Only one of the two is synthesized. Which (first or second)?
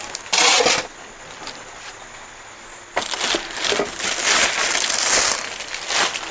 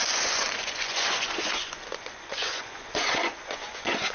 second